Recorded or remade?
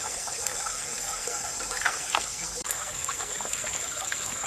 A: remade